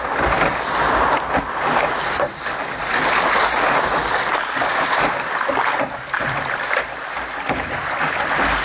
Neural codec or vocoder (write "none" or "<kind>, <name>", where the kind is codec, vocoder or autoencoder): none